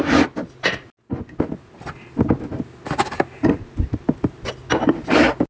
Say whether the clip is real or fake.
real